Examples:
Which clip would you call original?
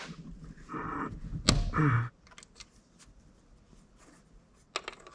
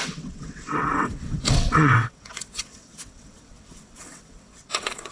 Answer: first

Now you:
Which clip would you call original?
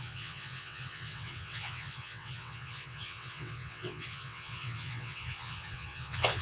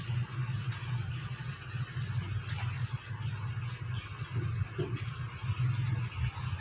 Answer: second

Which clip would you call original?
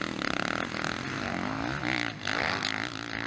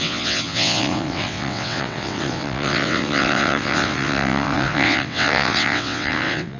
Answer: first